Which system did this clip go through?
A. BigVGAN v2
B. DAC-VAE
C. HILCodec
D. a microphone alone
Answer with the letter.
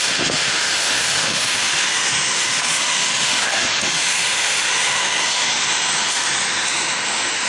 B